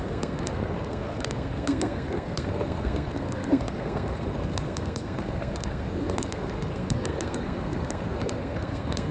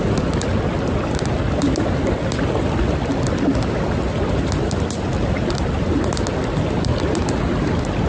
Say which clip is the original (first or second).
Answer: second